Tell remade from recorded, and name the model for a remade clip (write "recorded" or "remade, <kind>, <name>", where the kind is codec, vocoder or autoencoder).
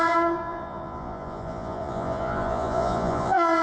remade, vocoder, Vocos